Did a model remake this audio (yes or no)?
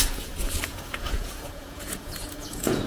yes